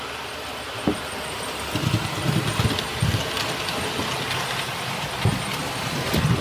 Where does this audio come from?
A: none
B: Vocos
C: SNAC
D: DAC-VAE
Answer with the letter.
A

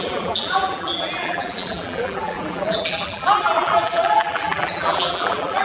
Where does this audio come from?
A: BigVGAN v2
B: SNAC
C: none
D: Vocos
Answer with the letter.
A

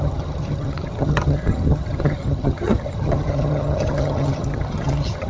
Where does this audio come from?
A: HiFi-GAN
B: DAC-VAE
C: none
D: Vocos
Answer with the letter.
A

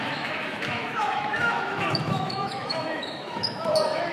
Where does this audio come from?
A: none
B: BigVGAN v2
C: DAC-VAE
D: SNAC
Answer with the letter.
C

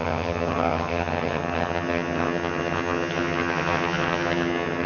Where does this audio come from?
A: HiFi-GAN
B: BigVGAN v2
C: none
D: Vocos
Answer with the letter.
A